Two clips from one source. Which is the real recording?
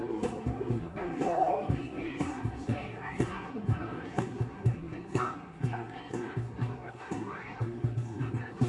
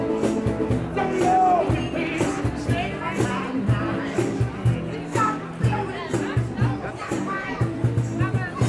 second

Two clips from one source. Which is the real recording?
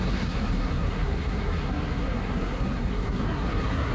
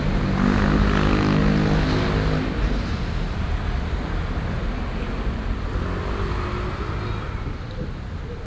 second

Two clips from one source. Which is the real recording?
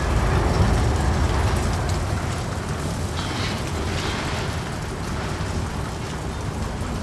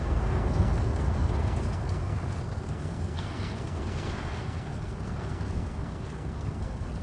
first